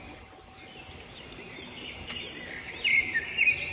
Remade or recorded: remade